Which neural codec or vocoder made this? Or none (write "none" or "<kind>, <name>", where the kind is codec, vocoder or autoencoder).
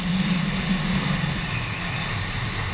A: none